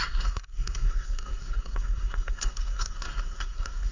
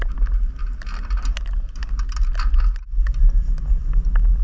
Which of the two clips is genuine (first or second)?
second